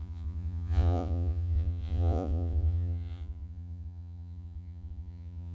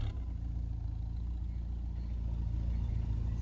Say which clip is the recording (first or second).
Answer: second